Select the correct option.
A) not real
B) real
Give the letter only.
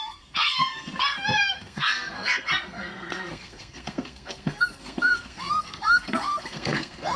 A